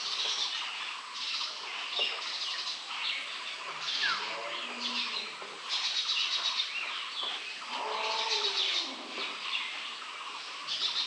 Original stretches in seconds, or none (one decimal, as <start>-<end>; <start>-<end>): 0.0-11.1